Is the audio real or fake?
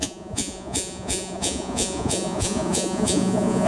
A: fake